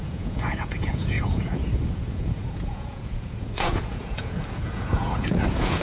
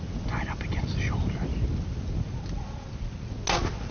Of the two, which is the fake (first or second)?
first